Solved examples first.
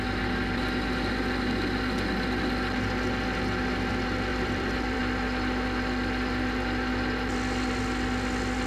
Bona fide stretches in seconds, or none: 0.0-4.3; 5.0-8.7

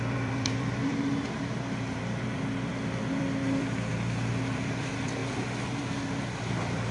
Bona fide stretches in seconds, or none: 5.2-5.8

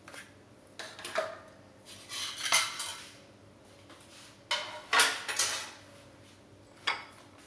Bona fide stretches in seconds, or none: 0.0-7.5

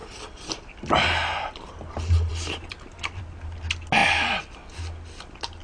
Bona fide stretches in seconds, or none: 0.8-2.3; 3.2-5.6

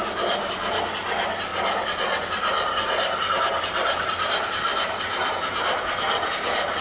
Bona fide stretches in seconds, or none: 1.5-3.3

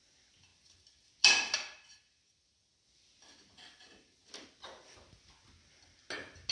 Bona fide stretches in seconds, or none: 0.0-6.5

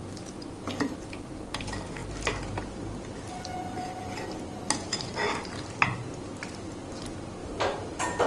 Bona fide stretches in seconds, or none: 0.0-7.4